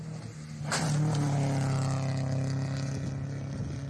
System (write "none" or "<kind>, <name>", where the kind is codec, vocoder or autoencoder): none